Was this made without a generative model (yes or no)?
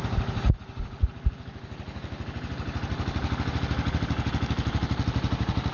yes